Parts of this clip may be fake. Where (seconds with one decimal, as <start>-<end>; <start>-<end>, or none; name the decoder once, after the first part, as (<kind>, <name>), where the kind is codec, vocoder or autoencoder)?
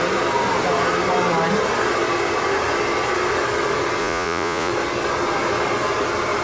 4.0-4.7 (vocoder, Vocos)